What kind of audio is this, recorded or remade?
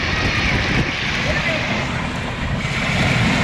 recorded